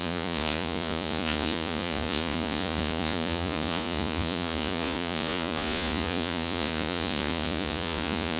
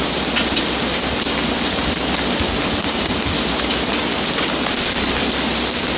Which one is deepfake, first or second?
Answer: first